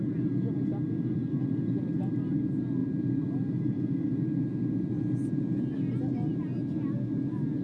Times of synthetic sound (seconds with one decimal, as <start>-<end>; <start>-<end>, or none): none

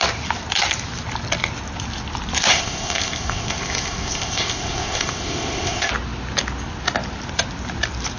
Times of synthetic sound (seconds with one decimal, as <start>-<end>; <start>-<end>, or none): 2.5-5.9

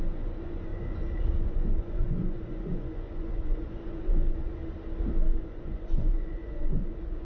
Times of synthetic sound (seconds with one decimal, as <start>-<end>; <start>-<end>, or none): 0.0-4.6; 5.4-7.2

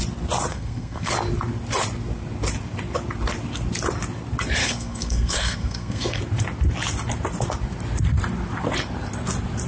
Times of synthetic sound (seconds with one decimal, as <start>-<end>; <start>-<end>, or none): 0.5-1.1; 4.6-6.2

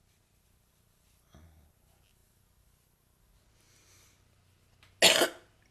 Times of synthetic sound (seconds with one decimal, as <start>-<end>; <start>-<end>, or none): none

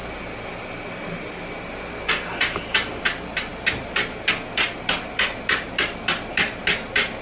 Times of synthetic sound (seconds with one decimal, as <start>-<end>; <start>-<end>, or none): none